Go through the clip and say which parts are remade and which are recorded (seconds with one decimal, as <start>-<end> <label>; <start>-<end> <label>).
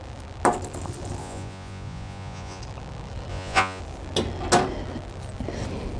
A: 0.0-1.2 recorded; 1.2-2.6 remade; 2.6-3.3 recorded; 3.3-3.8 remade; 3.8-6.0 recorded